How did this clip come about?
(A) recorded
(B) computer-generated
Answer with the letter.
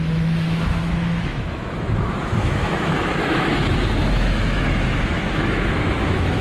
B